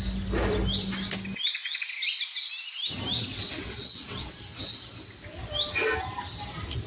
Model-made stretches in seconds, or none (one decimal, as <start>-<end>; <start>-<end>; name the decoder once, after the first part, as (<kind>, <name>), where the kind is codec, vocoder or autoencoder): 3.3-4.3 (vocoder, WaveNeXt)